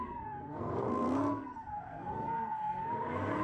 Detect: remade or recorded remade